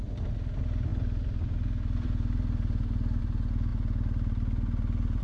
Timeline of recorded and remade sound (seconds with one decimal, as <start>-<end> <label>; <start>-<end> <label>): 0.0-5.2 recorded